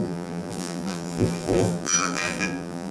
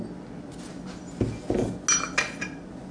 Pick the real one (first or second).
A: second